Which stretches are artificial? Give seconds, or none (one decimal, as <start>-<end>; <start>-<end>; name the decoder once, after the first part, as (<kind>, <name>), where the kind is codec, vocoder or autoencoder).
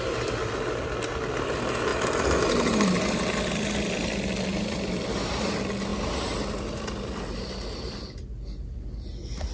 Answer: none